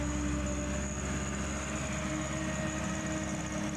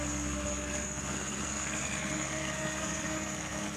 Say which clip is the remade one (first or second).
second